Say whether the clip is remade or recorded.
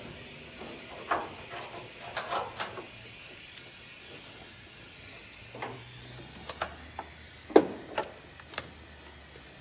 recorded